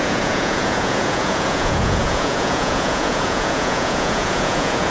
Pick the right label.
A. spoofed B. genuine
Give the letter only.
A